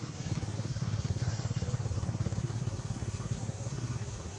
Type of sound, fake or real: fake